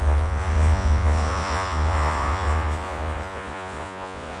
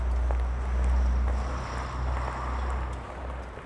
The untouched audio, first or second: second